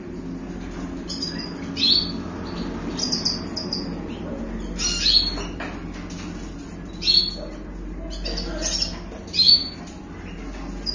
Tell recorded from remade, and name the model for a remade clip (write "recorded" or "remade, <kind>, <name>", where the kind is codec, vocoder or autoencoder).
recorded